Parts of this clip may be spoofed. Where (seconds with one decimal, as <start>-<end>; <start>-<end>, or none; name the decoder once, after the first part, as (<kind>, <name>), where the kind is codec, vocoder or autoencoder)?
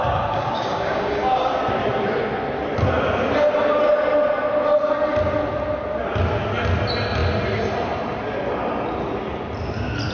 0.0-1.6 (codec, DAC)